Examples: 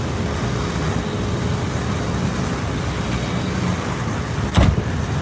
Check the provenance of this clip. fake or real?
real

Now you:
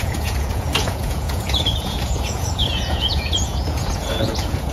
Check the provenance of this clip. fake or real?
fake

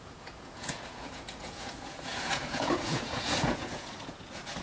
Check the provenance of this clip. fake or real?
fake